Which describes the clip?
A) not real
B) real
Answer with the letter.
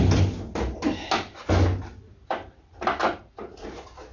B